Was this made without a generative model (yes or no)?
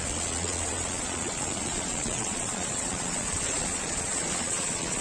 no